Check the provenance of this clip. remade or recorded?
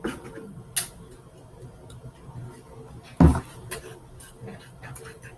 recorded